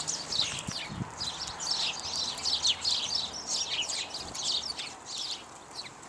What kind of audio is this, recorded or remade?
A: recorded